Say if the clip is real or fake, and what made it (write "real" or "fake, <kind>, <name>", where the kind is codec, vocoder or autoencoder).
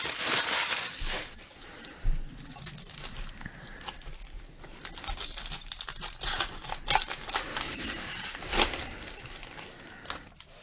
real